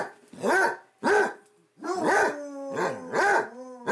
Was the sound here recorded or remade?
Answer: recorded